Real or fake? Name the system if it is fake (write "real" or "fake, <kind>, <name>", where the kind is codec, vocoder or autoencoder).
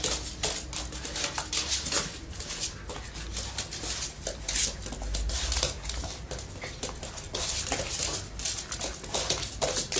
real